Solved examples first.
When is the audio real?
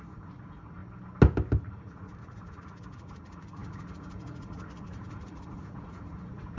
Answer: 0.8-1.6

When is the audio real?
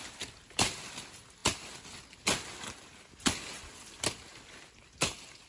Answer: 0.0-5.5